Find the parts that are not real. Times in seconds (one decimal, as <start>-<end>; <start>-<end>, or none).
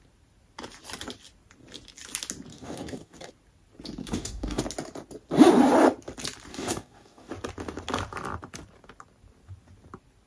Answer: 2.5-3.3; 4.0-4.6; 6.5-7.3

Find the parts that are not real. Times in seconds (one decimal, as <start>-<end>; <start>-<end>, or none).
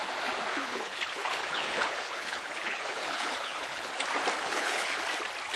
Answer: 0.5-3.9; 4.4-5.0